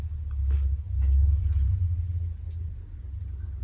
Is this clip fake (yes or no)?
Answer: no